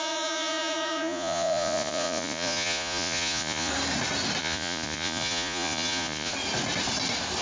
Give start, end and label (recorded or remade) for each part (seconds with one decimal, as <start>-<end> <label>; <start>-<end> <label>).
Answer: 0.0-3.7 remade; 3.7-4.4 recorded; 4.4-6.3 remade; 6.3-7.4 recorded

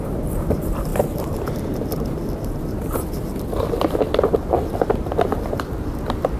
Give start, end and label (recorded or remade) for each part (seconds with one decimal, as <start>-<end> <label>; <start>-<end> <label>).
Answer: 0.0-6.4 recorded

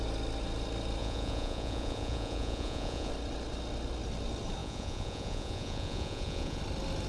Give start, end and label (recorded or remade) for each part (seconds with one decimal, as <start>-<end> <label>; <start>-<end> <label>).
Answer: 0.0-1.0 recorded; 1.0-3.1 remade; 3.1-4.6 recorded; 4.6-6.6 remade; 6.6-7.1 recorded

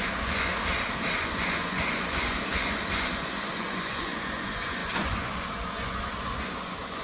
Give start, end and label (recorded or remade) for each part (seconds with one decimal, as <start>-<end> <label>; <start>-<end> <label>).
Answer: 0.0-0.5 remade; 0.5-1.2 recorded; 1.2-7.0 remade

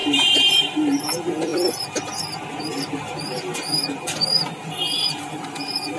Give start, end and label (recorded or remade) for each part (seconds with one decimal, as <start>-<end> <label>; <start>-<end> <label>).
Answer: 0.0-6.0 recorded

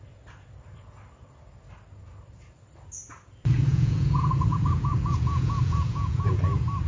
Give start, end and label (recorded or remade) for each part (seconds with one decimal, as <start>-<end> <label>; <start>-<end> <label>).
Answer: 0.0-3.7 recorded; 3.7-6.4 remade; 6.4-6.9 recorded

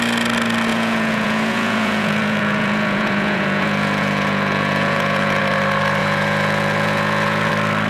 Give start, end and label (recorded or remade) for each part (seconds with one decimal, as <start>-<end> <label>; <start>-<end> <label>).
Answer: 0.0-0.7 recorded; 0.7-5.4 remade; 5.4-6.0 recorded; 6.0-7.5 remade; 7.5-7.9 recorded